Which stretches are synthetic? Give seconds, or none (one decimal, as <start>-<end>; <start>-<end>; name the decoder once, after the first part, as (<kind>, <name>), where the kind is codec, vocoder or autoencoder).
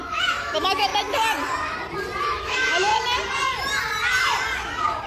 0.0-0.9 (autoencoder, DAC-VAE); 2.2-2.9